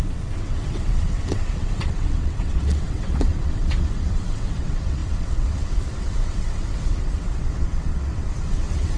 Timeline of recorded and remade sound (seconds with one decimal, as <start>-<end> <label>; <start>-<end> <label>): 0.0-9.0 remade